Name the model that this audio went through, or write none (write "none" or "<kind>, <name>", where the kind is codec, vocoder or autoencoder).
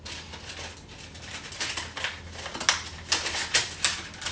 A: none